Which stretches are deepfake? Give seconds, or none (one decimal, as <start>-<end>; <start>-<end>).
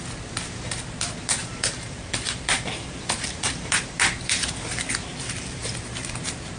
1.4-3.7; 5.1-5.7